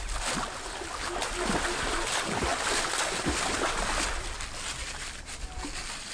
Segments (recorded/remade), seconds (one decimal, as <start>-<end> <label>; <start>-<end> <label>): 0.0-6.1 recorded